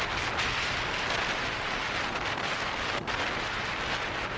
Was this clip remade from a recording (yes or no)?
no